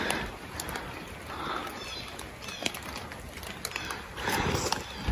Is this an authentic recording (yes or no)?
yes